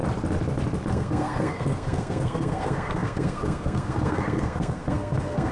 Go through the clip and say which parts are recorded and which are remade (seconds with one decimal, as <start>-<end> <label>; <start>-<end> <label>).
0.0-0.9 recorded; 0.9-5.5 remade